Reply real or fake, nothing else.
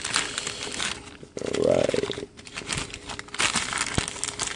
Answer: real